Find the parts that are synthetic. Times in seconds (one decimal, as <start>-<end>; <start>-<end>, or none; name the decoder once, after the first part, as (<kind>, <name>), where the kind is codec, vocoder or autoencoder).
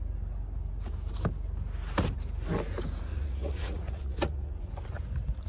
3.1-4.7 (vocoder, Vocos)